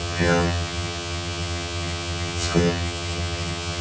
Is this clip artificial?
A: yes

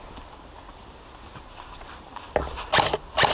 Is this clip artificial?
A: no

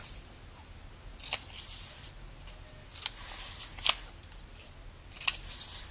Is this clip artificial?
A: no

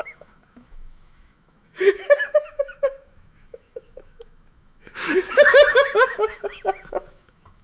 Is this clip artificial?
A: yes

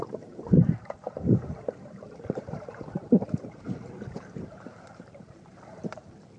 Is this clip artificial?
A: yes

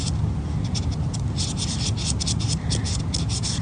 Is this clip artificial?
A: no